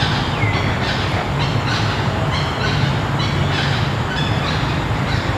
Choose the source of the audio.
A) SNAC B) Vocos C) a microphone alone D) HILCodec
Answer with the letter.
C